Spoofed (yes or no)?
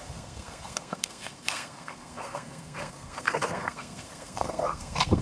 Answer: yes